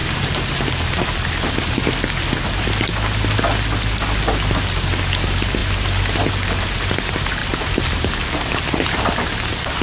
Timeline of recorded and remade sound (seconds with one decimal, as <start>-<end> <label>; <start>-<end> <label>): 0.0-0.6 remade; 0.6-7.4 recorded; 7.4-8.1 remade; 8.1-9.8 recorded